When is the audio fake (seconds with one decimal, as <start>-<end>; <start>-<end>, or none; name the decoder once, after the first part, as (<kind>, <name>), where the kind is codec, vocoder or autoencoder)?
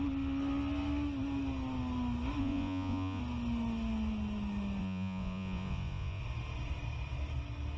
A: 2.4-3.2 (vocoder, Vocos); 4.8-6.2